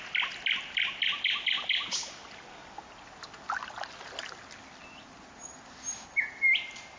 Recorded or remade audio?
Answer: recorded